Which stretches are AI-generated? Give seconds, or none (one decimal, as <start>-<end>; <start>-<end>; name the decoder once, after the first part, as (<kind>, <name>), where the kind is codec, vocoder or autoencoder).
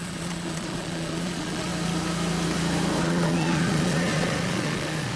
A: 0.0-1.7 (vocoder, Vocos); 3.0-5.2